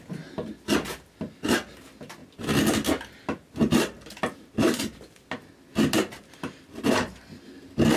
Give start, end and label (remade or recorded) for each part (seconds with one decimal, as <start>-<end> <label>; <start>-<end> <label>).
0.0-8.0 recorded